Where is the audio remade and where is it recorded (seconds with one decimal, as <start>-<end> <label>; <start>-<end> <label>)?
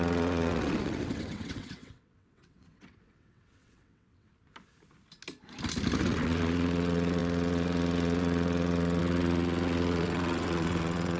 0.0-4.3 remade; 4.3-6.0 recorded; 6.0-11.2 remade